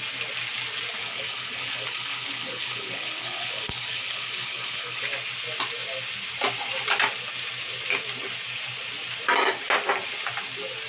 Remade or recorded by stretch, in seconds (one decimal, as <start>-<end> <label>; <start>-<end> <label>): 0.0-1.0 recorded; 1.0-5.0 remade; 5.0-10.9 recorded